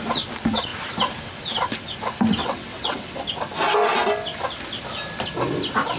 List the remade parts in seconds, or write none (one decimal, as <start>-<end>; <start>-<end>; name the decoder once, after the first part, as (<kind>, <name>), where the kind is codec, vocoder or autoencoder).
2.4-3.1 (vocoder, WaveNeXt)

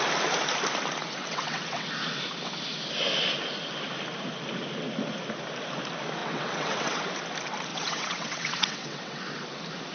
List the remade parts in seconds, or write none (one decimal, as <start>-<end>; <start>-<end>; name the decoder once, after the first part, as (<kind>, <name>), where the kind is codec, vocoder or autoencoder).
1.2-1.9 (vocoder, WaveNeXt); 6.2-7.0; 7.7-9.2

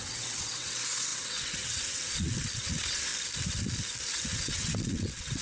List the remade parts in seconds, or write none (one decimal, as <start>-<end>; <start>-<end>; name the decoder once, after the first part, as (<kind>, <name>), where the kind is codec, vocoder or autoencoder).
0.0-3.1 (vocoder, WaveNeXt); 4.1-5.4

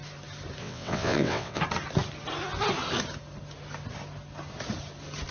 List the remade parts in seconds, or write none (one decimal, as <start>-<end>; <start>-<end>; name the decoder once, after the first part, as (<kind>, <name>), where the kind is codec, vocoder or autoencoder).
0.6-1.6 (vocoder, WaveNeXt)

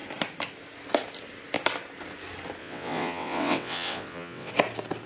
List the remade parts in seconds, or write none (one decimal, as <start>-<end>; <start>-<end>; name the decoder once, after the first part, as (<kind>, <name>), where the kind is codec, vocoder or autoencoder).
2.6-4.5 (vocoder, WaveNeXt)

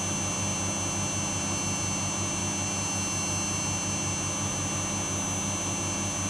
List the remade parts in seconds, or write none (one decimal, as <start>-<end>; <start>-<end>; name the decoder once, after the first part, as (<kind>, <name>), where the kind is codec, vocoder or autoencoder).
none